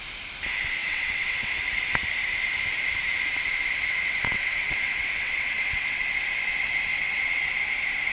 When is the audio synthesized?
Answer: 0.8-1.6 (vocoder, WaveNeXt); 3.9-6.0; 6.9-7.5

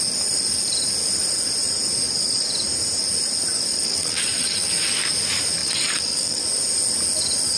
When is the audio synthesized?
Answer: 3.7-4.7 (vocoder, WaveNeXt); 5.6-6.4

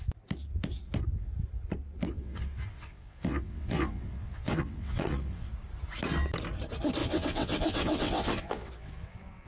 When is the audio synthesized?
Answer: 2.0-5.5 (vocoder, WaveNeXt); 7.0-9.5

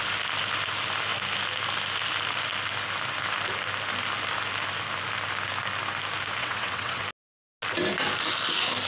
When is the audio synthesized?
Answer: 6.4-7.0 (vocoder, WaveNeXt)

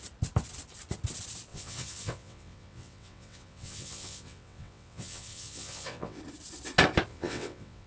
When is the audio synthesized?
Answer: 1.5-6.2 (vocoder, WaveNeXt); 7.1-7.9

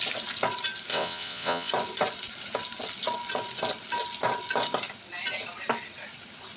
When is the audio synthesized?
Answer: 0.9-1.7 (vocoder, WaveNeXt)

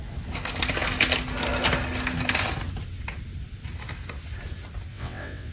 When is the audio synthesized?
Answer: 4.9-5.5 (vocoder, WaveNeXt)